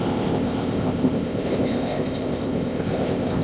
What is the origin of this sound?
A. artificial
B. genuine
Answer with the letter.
A